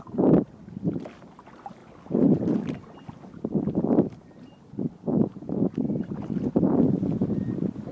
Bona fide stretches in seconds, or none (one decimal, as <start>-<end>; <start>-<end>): 0.0-7.9